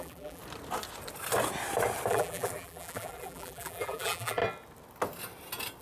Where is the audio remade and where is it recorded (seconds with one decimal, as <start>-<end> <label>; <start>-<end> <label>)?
0.0-0.4 remade; 0.4-2.1 recorded; 2.1-4.4 remade; 4.4-5.8 recorded